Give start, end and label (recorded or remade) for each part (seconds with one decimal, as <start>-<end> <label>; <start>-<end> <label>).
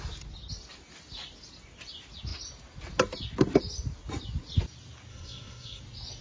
0.0-5.1 recorded; 5.1-5.8 remade; 5.8-6.2 recorded